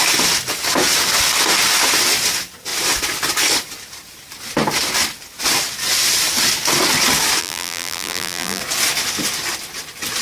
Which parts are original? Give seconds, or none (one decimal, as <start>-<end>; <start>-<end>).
0.0-7.4; 8.6-10.2